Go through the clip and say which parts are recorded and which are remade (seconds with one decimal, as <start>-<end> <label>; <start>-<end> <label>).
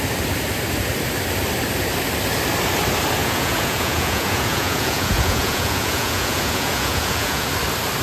0.0-3.2 recorded; 3.2-7.5 remade; 7.5-8.0 recorded